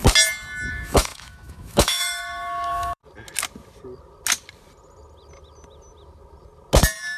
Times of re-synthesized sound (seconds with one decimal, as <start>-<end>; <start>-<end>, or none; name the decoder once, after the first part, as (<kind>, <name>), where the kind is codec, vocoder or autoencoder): 0.7-3.0 (autoencoder, DAC-VAE)